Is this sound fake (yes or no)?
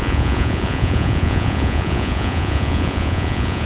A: yes